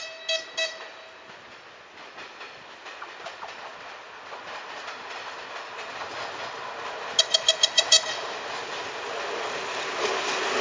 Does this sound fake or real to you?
real